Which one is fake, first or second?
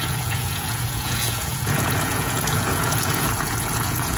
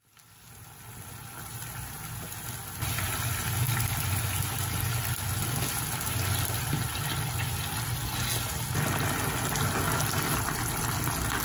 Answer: first